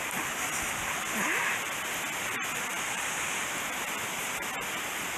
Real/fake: real